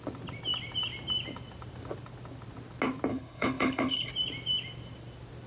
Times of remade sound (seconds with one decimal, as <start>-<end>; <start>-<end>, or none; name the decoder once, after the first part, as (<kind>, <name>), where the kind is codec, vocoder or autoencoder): 3.1-4.1 (codec, HILCodec)